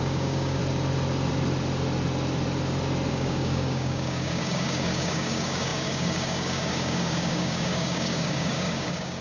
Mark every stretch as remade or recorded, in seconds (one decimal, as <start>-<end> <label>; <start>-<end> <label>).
0.0-0.6 remade; 0.6-3.1 recorded; 3.1-9.2 remade